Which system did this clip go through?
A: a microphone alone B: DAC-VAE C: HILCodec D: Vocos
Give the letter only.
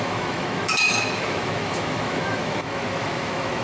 B